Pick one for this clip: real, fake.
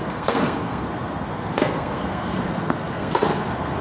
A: fake